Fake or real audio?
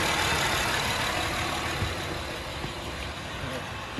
real